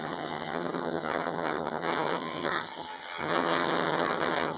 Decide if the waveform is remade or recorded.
remade